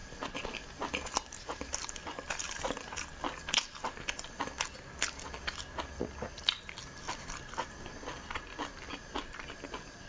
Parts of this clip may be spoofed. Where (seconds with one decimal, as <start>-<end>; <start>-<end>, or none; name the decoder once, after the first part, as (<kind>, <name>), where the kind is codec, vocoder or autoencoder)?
none